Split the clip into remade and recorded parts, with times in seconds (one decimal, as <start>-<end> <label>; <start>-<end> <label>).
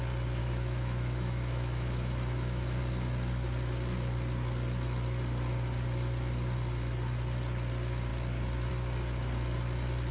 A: 0.0-0.4 recorded; 0.4-2.8 remade; 2.8-10.1 recorded